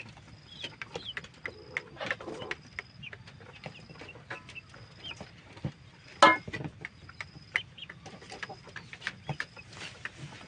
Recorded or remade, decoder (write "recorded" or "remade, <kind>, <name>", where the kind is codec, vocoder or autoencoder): recorded